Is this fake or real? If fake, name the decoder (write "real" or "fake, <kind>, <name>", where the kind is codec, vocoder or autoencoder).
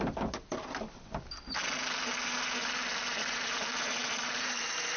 real